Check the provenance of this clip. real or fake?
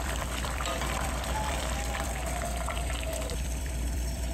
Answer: fake